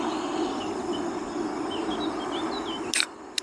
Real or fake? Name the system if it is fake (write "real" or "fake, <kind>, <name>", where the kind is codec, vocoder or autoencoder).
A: fake, vocoder, BigVGAN v2